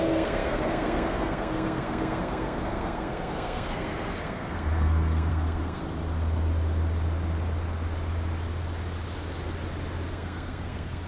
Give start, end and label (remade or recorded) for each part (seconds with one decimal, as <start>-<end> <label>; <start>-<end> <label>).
0.0-5.8 remade; 5.8-10.1 recorded; 10.1-11.1 remade